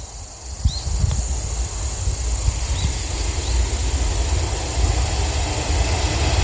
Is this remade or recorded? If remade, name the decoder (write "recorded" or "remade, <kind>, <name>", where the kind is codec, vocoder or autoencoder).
recorded